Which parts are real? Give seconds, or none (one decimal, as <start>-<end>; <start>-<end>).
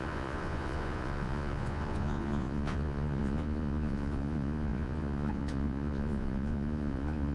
none